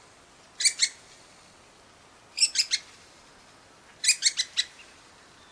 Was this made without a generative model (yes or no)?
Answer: yes